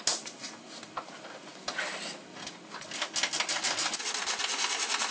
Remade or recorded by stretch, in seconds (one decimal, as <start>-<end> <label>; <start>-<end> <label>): 0.0-5.1 recorded